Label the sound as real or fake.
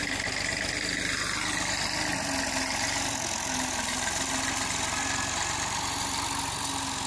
real